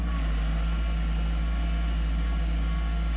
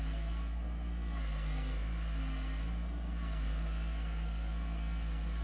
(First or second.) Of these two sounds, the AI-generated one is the second